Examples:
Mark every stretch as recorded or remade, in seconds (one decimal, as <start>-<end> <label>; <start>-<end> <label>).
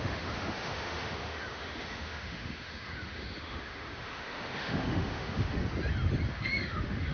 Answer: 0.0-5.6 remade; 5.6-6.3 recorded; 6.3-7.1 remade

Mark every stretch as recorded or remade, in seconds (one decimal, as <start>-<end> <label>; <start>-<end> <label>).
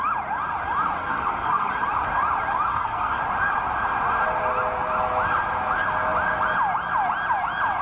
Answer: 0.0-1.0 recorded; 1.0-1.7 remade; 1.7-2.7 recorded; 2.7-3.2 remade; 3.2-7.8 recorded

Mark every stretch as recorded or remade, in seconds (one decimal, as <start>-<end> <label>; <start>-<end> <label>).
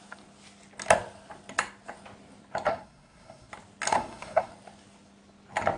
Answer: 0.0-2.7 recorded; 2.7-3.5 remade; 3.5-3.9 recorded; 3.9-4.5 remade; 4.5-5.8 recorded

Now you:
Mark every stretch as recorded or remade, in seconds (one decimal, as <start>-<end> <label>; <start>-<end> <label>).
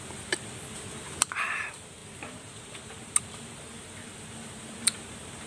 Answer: 0.0-5.5 recorded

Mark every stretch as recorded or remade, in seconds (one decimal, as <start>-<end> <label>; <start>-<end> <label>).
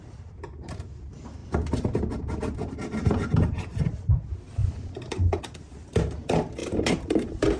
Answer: 0.0-1.4 recorded; 1.4-2.7 remade; 2.7-4.6 recorded; 4.6-5.4 remade; 5.4-6.6 recorded; 6.6-7.6 remade